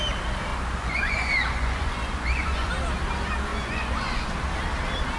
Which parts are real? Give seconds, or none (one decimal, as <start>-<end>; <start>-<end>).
0.0-0.5; 2.7-3.5; 4.3-5.2